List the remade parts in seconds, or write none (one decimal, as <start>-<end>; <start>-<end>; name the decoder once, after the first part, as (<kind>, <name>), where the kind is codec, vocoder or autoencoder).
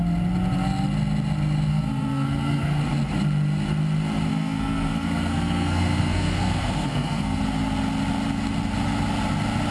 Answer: 1.7-2.8 (codec, SNAC); 4.3-7.4